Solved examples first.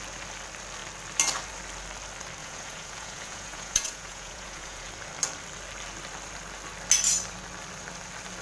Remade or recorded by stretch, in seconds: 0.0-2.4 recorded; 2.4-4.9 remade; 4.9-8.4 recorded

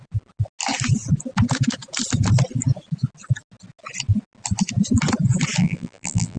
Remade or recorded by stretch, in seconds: 0.0-5.6 recorded; 5.6-6.4 remade

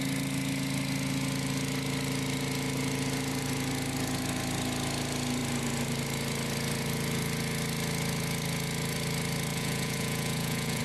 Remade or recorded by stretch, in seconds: 0.0-9.5 recorded; 9.5-10.8 remade

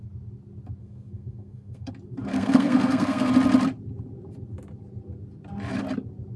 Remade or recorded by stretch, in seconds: 0.0-0.8 recorded; 0.8-1.9 remade; 1.9-2.3 recorded; 2.3-3.3 remade; 3.3-6.4 recorded

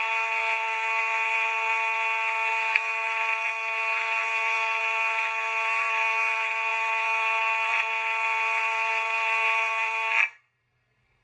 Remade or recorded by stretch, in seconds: 0.0-11.2 remade

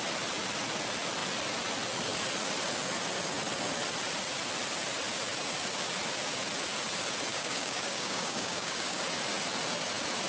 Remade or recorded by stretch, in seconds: 0.0-7.3 recorded; 7.3-9.0 remade; 9.0-10.3 recorded

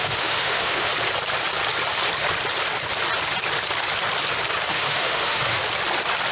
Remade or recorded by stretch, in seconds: 0.0-0.9 remade; 0.9-4.7 recorded; 4.7-5.6 remade; 5.6-6.3 recorded